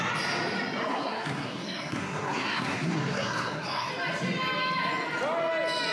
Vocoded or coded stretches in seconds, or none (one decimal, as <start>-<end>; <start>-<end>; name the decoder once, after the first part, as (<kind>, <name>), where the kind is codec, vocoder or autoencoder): 0.9-3.9 (codec, SNAC)